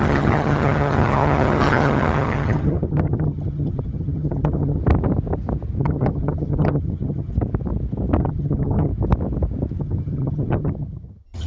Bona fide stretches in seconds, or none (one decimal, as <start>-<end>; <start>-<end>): 4.8-5.8; 7.3-8.2; 8.9-9.8